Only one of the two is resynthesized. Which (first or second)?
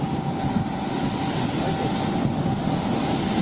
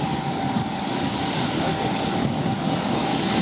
second